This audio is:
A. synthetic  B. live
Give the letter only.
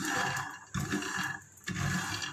B